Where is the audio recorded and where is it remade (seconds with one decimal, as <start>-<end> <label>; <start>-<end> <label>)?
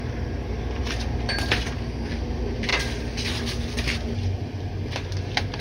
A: 0.0-2.7 remade; 2.7-5.6 recorded